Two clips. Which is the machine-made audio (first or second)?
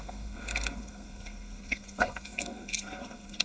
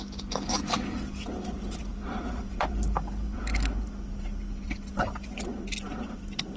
first